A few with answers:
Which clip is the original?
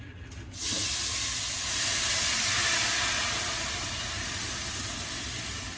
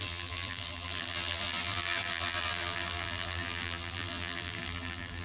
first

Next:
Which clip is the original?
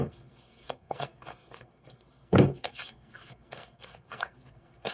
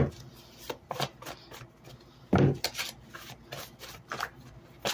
second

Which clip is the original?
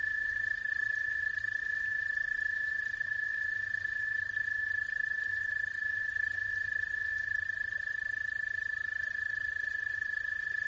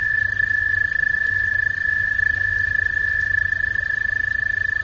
second